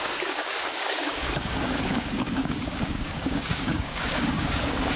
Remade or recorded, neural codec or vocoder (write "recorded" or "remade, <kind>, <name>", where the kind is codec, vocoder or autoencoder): remade, codec, DAC